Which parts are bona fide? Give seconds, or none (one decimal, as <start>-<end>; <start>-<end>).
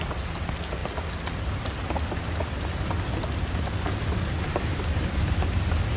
0.0-6.0